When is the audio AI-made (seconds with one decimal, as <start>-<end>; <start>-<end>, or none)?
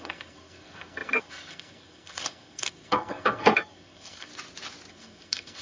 0.0-4.3; 4.9-5.6